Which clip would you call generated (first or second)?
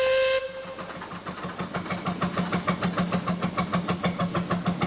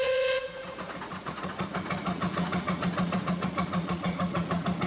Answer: second